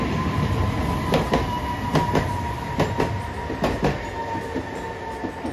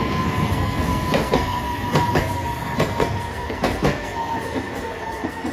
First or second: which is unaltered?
first